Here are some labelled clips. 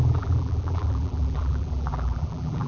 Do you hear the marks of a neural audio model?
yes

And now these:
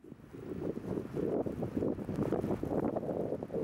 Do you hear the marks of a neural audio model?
no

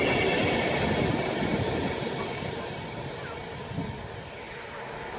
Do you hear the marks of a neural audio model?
no